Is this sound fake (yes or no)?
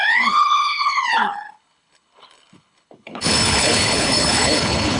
yes